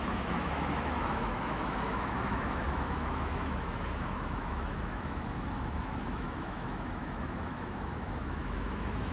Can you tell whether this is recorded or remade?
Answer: remade